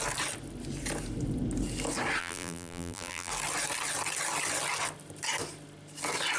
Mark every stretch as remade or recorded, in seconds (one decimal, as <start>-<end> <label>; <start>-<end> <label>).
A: 0.0-2.2 recorded; 2.2-3.3 remade; 3.3-6.4 recorded